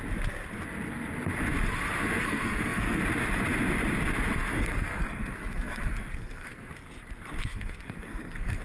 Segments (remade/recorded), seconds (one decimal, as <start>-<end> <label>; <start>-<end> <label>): 0.0-2.2 recorded; 2.2-3.0 remade; 3.0-4.5 recorded; 4.5-6.7 remade; 6.7-7.4 recorded; 7.4-8.6 remade